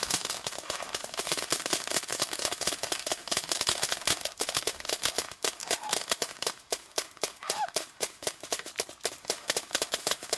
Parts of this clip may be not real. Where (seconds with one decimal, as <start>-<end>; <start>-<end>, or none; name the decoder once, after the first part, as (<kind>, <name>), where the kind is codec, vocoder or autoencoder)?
0.0-8.7 (autoencoder, DAC-VAE); 9.2-10.4